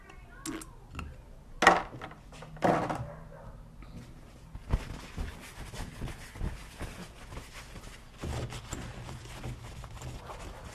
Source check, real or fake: real